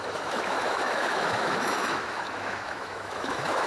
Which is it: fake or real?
fake